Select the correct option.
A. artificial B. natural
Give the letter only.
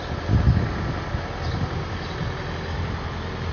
B